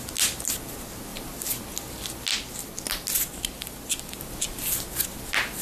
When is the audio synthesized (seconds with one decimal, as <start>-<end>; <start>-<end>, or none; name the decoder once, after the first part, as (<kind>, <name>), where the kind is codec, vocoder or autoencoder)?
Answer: 1.1-1.6 (vocoder, BigVGAN v2)